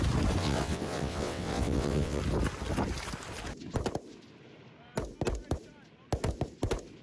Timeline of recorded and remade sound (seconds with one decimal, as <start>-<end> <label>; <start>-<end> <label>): 0.0-0.4 recorded; 0.4-2.2 remade; 2.2-7.0 recorded